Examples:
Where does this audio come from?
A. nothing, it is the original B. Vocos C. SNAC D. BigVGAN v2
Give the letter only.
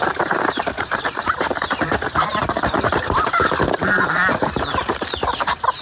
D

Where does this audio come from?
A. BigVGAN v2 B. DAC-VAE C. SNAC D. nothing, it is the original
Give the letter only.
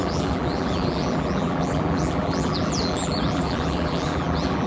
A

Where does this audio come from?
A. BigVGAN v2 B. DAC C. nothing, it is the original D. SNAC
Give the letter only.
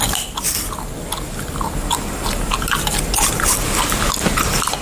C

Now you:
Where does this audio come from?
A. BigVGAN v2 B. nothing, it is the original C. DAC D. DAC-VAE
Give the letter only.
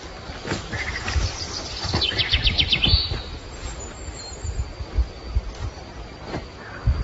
B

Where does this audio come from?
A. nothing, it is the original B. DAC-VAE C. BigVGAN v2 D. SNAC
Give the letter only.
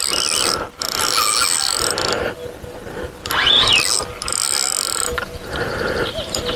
A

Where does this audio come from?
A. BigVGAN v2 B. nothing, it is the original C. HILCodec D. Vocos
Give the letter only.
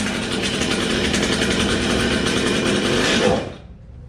A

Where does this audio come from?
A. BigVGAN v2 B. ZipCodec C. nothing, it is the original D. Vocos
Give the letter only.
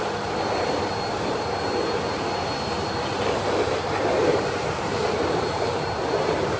A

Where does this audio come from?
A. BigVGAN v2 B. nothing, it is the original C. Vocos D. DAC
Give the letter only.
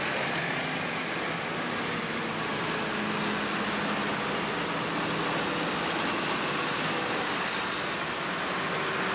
B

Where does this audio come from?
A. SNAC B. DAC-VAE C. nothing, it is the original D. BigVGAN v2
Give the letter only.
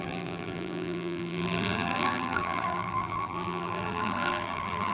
D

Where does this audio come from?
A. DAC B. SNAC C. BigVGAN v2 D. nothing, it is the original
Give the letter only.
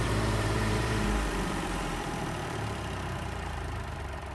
C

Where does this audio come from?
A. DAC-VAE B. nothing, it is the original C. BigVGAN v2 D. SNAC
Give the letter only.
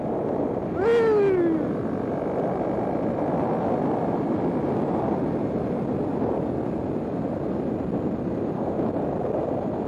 B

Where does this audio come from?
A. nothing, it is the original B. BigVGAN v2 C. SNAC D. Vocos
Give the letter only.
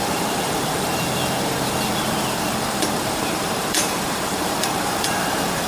B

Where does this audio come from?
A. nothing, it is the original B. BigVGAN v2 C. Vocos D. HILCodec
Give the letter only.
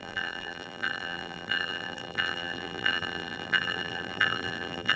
B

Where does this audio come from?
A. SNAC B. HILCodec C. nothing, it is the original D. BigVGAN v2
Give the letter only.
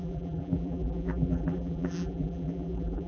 D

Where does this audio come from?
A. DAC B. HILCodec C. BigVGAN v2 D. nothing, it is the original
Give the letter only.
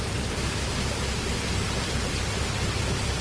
D